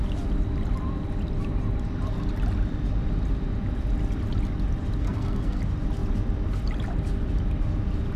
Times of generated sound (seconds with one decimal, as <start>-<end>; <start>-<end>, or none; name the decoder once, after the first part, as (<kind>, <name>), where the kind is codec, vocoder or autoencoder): 5.0-5.6 (codec, SNAC)